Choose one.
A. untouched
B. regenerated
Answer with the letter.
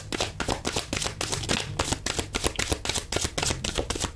A